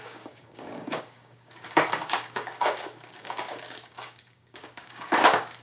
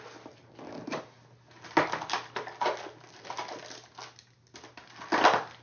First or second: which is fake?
first